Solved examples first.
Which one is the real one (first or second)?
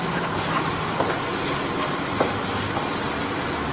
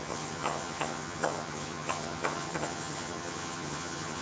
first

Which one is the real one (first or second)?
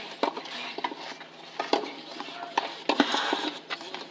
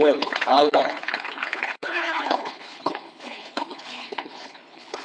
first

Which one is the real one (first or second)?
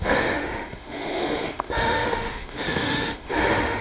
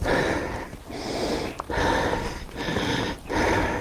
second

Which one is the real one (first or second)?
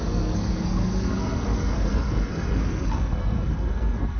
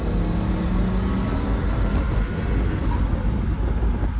second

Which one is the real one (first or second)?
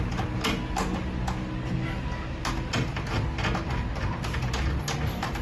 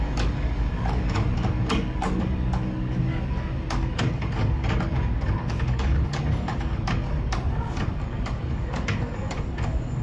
first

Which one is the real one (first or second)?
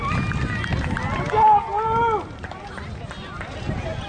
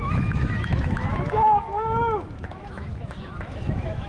first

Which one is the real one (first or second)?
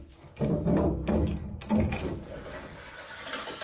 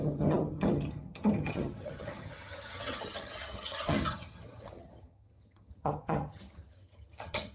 first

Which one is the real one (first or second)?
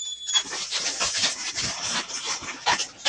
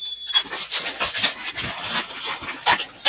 second